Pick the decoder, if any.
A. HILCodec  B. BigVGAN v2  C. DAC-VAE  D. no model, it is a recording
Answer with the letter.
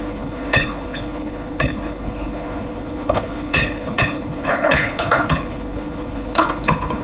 A